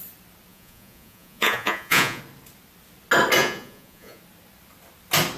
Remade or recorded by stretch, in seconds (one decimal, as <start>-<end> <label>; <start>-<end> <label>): 0.0-0.5 recorded; 0.5-2.2 remade; 2.2-3.4 recorded; 3.4-4.2 remade; 4.2-5.4 recorded